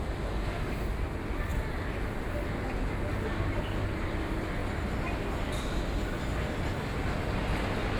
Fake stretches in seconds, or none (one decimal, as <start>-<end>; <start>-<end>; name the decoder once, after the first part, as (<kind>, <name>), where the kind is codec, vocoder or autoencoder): none